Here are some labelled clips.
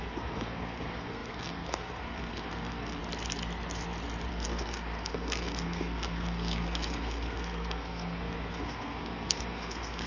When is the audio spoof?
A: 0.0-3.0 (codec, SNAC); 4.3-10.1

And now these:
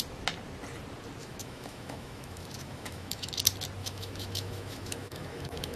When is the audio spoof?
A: 1.2-3.3 (autoencoder, DAC-VAE); 3.8-5.8